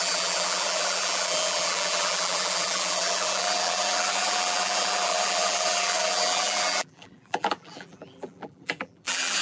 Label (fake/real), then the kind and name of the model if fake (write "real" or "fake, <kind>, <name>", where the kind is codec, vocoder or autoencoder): fake, vocoder, BigVGAN v2